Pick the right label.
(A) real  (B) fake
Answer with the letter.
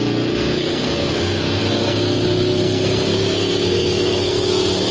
B